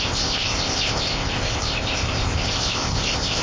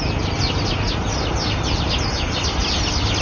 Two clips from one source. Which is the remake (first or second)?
first